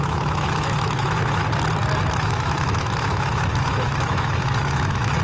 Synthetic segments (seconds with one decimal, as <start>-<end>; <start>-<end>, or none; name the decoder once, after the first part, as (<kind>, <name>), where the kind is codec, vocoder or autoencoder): 0.0-1.4 (autoencoder, DAC-VAE); 2.1-5.2